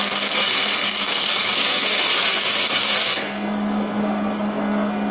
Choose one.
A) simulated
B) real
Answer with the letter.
A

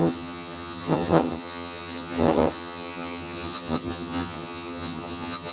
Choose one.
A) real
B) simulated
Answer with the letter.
B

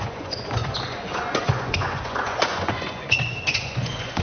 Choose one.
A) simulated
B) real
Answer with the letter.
A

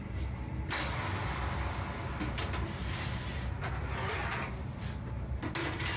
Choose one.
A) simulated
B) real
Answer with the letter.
B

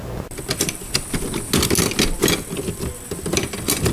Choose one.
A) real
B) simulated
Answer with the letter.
A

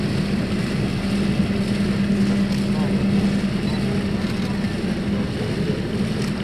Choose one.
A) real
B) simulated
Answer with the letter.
A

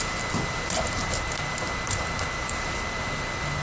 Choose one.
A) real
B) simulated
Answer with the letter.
A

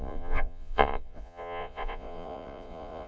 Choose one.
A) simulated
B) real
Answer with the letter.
A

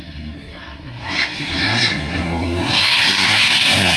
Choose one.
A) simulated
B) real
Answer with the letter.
A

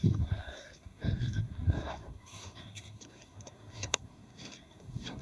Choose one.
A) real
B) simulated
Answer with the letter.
B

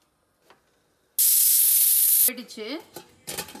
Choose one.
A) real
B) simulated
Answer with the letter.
A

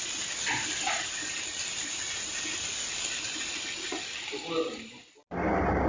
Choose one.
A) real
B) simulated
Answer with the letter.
A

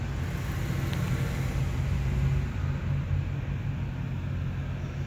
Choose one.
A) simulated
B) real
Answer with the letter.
B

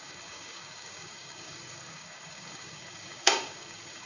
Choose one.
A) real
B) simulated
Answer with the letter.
B